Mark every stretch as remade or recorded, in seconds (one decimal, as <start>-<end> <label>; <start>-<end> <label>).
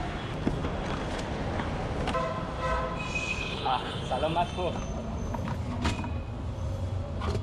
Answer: 0.0-3.3 recorded; 3.3-4.1 remade; 4.1-7.4 recorded